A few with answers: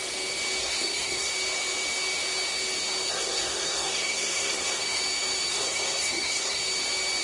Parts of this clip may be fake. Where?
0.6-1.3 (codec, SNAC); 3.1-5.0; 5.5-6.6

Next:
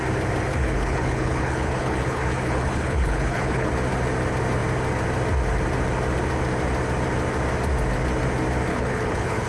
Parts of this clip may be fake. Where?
0.5-3.7 (codec, HILCodec); 8.7-9.5

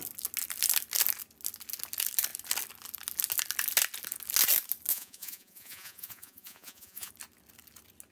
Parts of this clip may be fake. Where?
4.9-7.1 (vocoder, Vocos)